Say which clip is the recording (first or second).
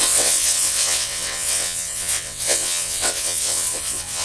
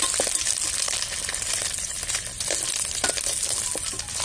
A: second